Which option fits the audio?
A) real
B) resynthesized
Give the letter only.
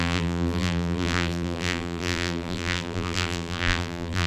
B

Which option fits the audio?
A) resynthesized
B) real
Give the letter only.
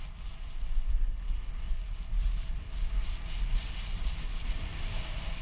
B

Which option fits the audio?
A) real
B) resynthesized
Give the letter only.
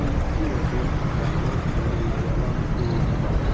A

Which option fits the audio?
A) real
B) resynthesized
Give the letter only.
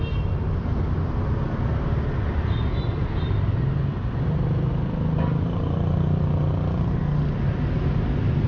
A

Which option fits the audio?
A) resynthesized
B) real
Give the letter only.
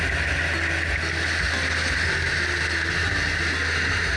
B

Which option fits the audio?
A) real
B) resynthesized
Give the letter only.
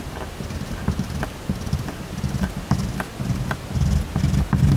A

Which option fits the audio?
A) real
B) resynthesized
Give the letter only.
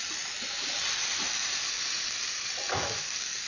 A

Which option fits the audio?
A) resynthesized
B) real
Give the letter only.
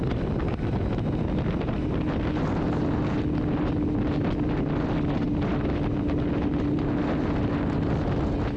B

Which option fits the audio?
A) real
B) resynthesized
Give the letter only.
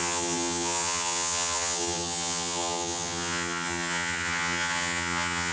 B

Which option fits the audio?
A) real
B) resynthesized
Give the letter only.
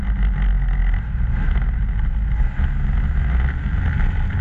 A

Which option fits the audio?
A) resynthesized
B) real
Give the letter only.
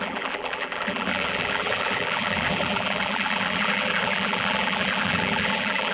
A